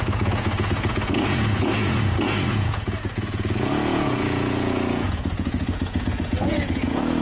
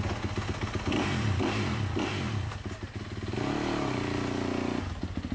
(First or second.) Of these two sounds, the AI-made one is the first